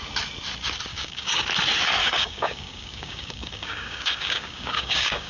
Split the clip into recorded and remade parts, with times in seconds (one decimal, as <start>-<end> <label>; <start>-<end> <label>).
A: 0.0-0.9 recorded; 0.9-1.4 remade; 1.4-2.0 recorded; 2.0-5.3 remade